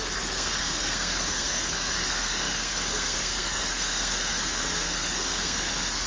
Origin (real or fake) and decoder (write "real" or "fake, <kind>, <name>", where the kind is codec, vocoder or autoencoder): fake, codec, SNAC